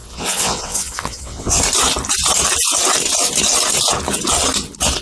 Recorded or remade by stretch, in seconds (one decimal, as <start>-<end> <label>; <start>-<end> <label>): 0.0-1.6 remade; 1.6-5.0 recorded